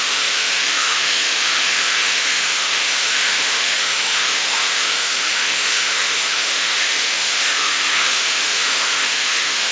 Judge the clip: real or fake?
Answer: fake